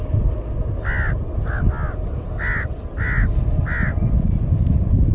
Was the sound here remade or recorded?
recorded